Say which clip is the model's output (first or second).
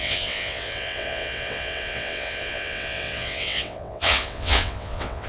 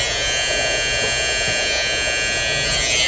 first